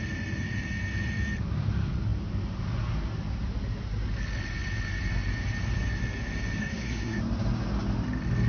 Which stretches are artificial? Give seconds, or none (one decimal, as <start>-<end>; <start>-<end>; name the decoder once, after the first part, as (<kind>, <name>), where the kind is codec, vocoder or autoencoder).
6.6-7.2 (codec, SNAC)